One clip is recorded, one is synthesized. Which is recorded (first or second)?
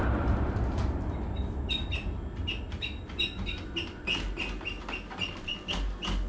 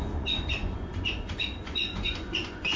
first